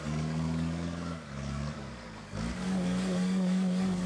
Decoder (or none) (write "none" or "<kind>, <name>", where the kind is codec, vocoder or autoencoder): codec, DAC